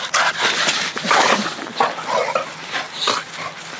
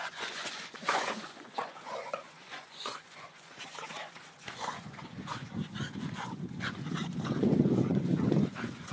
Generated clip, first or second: second